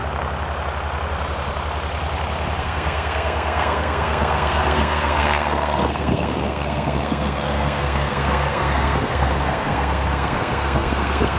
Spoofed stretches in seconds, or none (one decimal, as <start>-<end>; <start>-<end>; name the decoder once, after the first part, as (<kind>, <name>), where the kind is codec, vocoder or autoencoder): 2.6-11.4 (codec, SNAC)